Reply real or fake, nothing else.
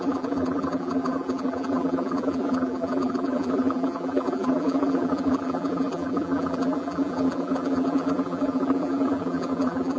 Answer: fake